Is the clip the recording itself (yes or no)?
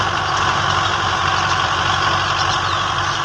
yes